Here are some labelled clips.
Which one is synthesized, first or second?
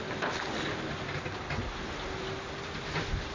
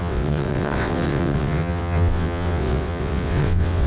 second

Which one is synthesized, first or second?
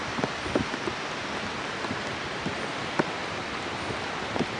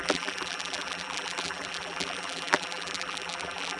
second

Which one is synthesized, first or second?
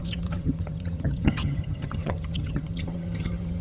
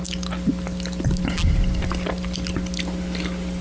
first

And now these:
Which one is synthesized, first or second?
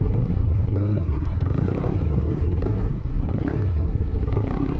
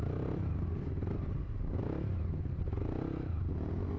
first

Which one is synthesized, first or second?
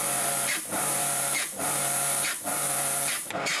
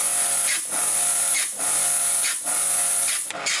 first